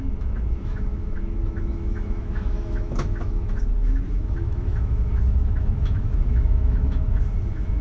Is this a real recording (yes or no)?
no